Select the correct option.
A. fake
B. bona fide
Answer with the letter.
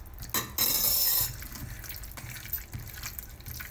B